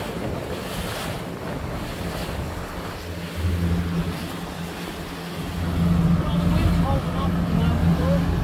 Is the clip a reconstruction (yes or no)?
no